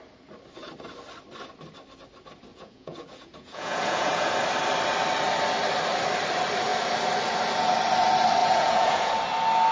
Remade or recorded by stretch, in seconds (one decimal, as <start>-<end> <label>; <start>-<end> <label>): 0.0-2.5 recorded; 2.5-4.3 remade; 4.3-8.4 recorded; 8.4-9.1 remade; 9.1-9.7 recorded